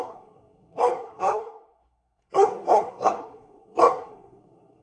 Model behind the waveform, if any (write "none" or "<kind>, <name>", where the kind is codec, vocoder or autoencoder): codec, SNAC